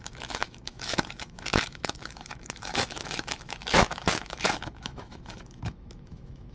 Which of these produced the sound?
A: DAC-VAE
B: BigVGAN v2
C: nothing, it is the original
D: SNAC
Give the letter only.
A